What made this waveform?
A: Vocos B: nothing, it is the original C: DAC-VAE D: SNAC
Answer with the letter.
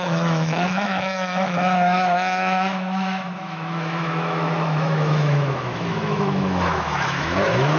C